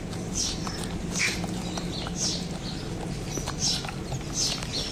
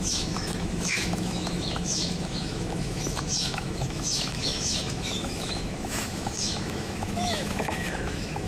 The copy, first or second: second